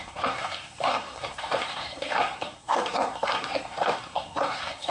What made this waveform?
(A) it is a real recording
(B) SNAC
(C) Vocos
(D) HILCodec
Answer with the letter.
B